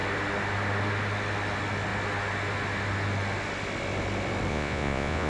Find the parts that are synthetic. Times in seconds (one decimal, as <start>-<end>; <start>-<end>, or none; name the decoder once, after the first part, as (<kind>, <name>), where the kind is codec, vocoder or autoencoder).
4.5-5.3 (vocoder, Vocos)